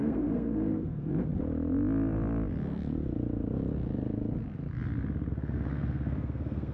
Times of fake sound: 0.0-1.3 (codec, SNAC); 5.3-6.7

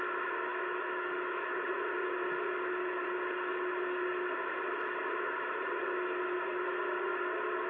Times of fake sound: 0.5-1.7 (autoencoder, DAC-VAE)

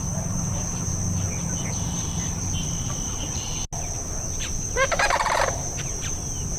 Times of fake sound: 0.0-0.9 (vocoder, BigVGAN v2); 1.6-3.5; 5.4-6.6

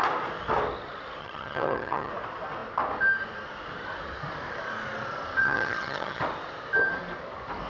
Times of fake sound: 1.2-2.1 (vocoder, HiFi-GAN); 5.4-6.2